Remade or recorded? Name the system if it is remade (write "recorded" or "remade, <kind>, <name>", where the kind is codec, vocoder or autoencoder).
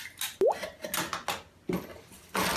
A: recorded